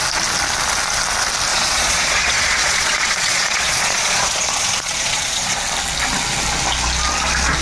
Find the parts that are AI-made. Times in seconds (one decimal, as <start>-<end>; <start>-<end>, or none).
1.5-5.6